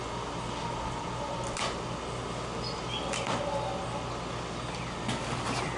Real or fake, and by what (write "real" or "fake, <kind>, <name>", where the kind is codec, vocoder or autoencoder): real